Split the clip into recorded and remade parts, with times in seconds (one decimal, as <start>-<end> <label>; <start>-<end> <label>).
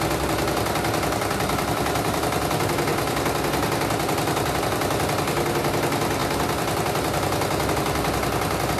0.0-8.8 recorded